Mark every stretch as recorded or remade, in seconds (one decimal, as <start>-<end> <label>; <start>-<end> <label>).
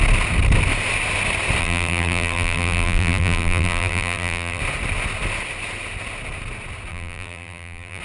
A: 0.0-1.6 recorded; 1.6-4.6 remade; 4.6-6.9 recorded; 6.9-8.0 remade